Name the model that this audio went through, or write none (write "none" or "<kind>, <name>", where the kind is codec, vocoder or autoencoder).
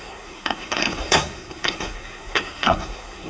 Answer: codec, SNAC